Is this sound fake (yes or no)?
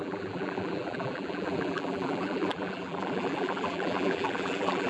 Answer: yes